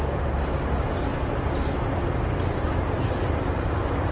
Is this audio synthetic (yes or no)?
no